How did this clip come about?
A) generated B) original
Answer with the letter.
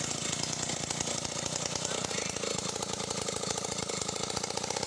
B